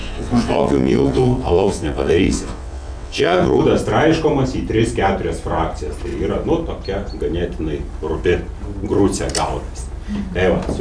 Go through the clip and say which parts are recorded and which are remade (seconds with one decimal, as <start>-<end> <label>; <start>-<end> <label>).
0.0-3.6 remade; 3.6-10.8 recorded